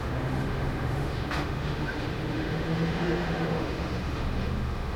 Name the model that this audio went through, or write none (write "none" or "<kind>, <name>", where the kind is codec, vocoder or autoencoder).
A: autoencoder, DAC-VAE